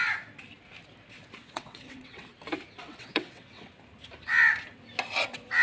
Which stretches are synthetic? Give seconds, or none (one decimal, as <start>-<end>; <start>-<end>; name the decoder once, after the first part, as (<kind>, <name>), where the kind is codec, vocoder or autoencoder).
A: 1.4-2.3 (vocoder, WaveNeXt); 2.8-3.7